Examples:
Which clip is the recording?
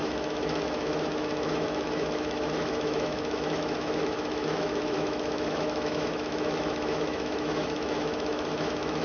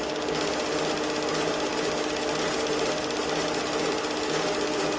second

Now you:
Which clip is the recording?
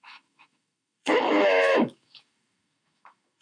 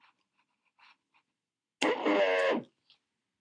second